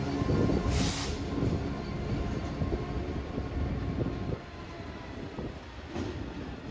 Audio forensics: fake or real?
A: real